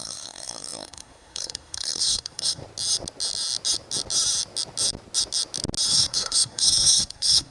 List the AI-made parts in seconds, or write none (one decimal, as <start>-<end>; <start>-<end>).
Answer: 0.0-2.6; 5.9-7.5